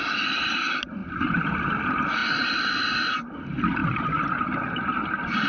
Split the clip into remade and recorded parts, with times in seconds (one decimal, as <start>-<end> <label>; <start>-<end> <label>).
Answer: 0.0-2.2 recorded; 2.2-2.7 remade; 2.7-3.8 recorded; 3.8-4.3 remade; 4.3-5.5 recorded